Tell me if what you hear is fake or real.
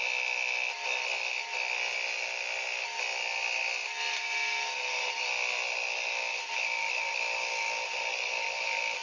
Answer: real